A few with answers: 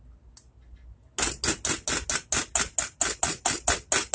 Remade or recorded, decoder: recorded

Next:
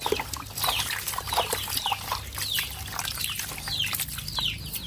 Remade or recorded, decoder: recorded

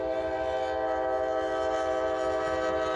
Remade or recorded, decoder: recorded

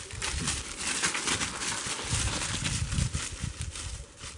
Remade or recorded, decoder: recorded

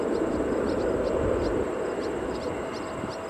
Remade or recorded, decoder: recorded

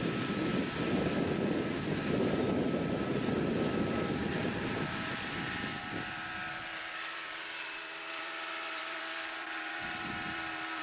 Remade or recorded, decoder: remade, vocoder, BigVGAN v2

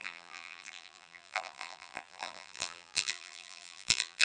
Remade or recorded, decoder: remade, vocoder, BigVGAN v2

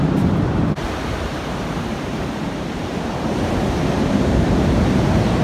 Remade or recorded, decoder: remade, vocoder, BigVGAN v2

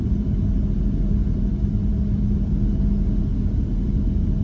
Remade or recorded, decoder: recorded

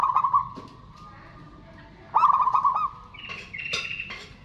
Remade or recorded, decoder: recorded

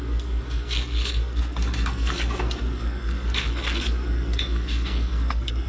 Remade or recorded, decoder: remade, codec, SNAC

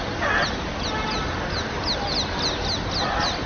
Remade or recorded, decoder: recorded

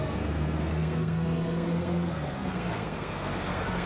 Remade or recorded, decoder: remade, codec, SNAC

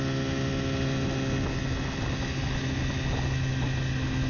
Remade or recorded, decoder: recorded